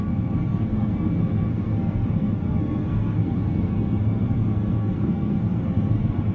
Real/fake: fake